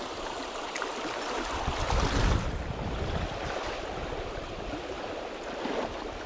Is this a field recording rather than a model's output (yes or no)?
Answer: yes